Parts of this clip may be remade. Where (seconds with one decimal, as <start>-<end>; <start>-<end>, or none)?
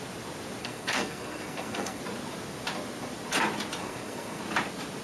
0.6-2.0; 3.8-4.4